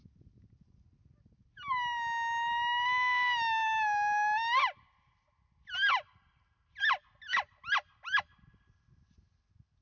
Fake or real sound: real